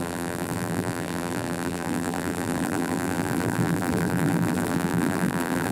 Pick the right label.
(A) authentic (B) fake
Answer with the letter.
B